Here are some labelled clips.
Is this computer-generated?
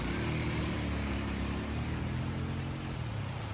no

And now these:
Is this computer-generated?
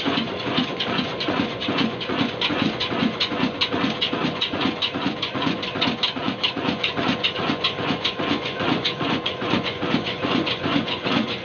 yes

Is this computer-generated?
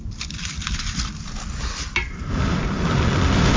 no